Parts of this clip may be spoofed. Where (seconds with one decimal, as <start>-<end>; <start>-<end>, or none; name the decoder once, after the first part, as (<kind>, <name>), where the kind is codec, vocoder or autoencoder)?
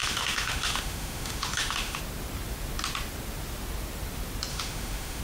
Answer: 0.0-2.0 (autoencoder, DAC-VAE); 4.5-5.2